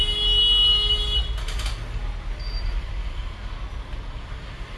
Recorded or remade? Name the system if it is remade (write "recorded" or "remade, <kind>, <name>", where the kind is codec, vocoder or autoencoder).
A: recorded